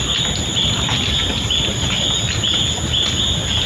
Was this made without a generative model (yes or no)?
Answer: yes